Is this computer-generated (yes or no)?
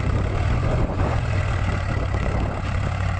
yes